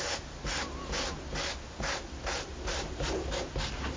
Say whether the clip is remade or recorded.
recorded